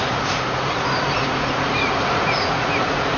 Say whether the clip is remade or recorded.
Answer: remade